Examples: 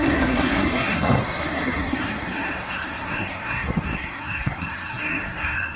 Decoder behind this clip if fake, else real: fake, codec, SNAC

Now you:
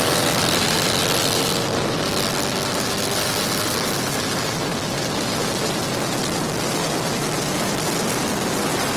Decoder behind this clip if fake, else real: real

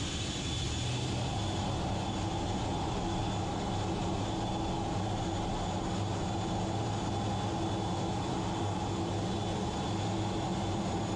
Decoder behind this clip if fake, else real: real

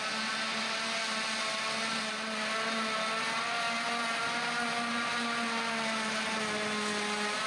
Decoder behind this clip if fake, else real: real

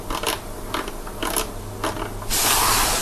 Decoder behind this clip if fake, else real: real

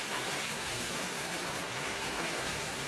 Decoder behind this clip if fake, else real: fake, codec, SNAC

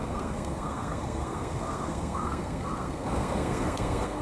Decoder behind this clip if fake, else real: fake, codec, SNAC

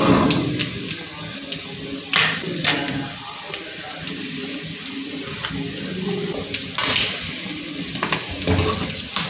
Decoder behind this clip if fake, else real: real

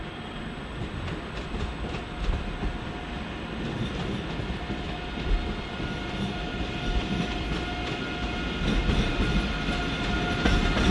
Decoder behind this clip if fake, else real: real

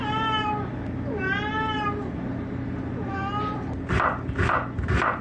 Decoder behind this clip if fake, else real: real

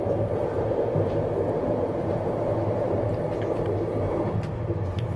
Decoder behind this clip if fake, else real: real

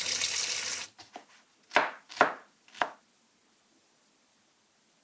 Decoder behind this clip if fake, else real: real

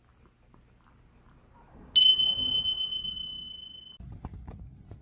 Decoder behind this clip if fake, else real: real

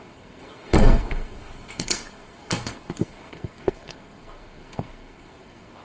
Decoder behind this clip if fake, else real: fake, codec, SNAC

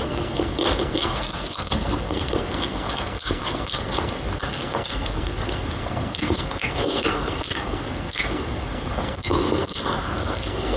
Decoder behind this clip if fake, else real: fake, codec, SNAC